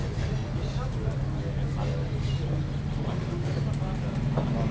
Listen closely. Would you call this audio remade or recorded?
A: recorded